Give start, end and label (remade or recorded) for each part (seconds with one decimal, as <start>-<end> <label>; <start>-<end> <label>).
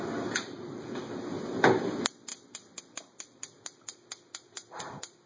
0.0-5.3 recorded